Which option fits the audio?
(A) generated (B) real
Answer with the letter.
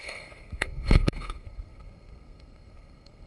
A